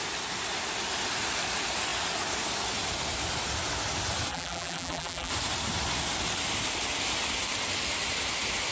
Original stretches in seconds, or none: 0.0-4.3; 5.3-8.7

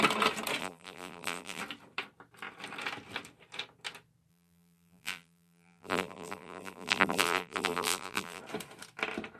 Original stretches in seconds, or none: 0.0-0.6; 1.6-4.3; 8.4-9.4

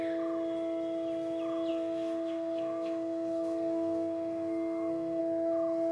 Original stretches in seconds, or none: 0.0-1.7; 5.2-5.9